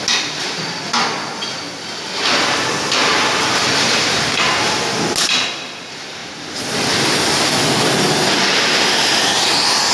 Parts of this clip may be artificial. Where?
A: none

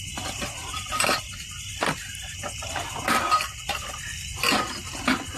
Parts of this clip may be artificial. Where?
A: 0.6-1.2 (vocoder, BigVGAN v2)

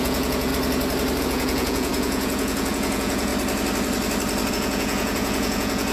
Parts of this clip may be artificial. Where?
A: 0.0-0.5 (vocoder, Vocos); 1.2-3.3; 4.5-5.9